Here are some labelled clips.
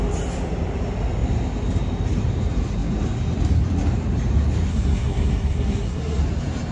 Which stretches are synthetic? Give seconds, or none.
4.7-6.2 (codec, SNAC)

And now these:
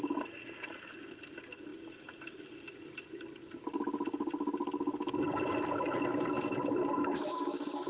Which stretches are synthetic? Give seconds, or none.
7.0-7.9 (codec, SNAC)

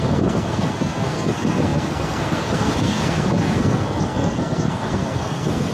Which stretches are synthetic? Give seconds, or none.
0.0-5.7 (codec, SNAC)

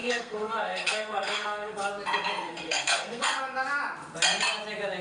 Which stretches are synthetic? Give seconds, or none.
0.0-1.9 (codec, SNAC); 2.3-3.4

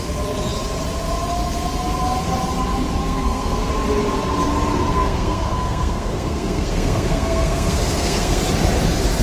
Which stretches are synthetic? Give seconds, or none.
3.0-3.7 (codec, SNAC); 4.9-8.4

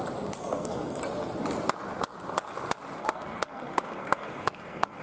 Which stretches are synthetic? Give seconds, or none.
0.4-1.0 (codec, SNAC); 3.0-5.0